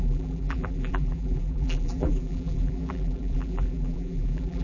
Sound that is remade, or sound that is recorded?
remade